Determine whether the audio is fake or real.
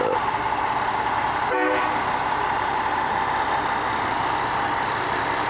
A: real